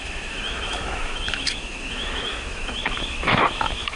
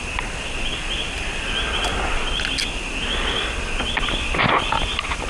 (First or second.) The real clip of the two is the second